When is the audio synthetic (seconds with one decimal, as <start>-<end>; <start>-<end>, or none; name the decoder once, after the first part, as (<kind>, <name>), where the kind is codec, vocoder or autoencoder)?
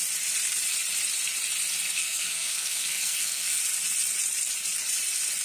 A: 2.0-3.6 (codec, SNAC)